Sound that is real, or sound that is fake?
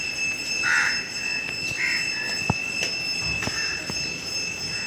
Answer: real